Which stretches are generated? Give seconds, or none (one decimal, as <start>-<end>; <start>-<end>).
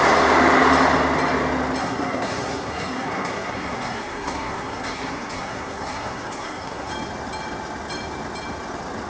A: 1.8-6.9